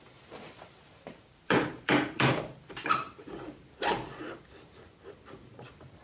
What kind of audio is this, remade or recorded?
remade